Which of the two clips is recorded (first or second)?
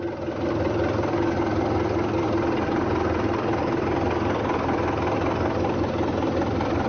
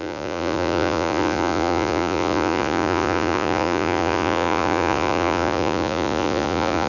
first